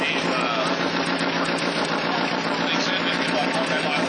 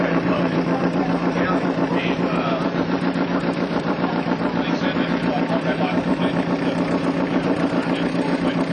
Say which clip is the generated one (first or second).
second